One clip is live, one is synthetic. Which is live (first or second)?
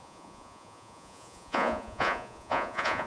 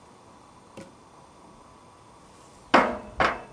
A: second